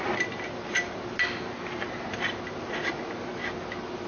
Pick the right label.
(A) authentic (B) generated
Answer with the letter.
A